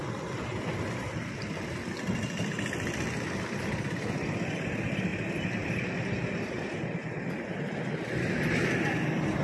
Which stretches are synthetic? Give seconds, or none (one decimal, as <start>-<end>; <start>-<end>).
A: none